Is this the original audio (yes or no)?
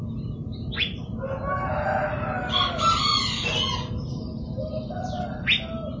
yes